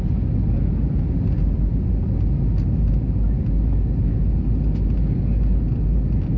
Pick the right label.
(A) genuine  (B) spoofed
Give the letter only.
A